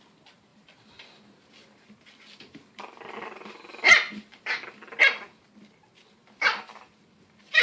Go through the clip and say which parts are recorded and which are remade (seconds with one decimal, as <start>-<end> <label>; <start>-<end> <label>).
0.0-0.5 recorded; 0.5-5.0 remade; 5.0-6.2 recorded; 6.2-7.6 remade